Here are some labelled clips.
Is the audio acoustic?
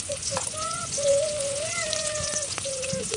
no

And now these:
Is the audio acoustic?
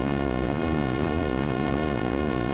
no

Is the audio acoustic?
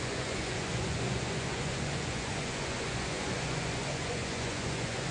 no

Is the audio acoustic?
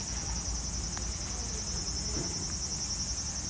yes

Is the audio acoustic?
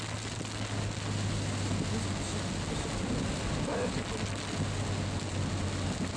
yes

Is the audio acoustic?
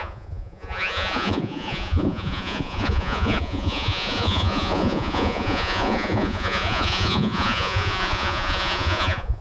no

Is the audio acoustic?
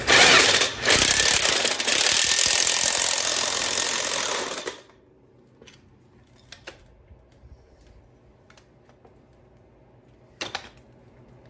yes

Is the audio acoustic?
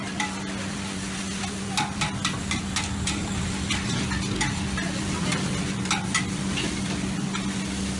yes